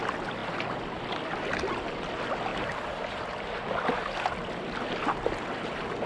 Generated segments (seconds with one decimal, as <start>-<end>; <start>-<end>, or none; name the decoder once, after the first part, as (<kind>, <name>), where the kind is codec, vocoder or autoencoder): 2.5-3.5 (vocoder, BigVGAN v2)